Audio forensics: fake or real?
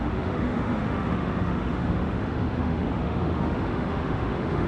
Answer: fake